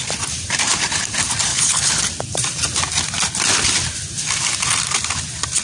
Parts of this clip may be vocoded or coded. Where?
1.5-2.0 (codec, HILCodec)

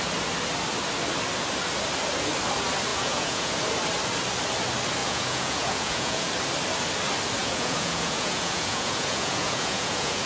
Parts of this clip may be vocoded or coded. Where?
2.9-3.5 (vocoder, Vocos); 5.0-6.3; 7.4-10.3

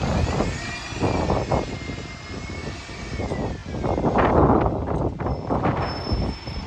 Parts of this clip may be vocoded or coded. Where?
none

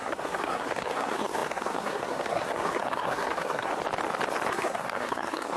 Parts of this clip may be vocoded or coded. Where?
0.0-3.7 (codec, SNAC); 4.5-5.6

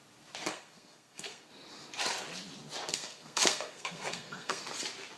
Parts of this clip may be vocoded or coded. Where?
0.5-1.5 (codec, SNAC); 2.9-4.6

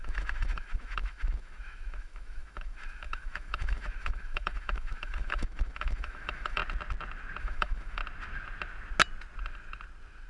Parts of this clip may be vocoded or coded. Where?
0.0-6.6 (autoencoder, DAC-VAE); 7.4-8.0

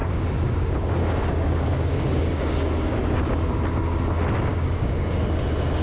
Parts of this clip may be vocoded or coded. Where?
0.0-3.5 (codec, DAC); 4.5-5.1